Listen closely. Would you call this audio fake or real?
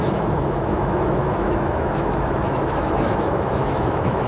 fake